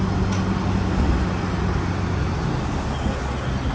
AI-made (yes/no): no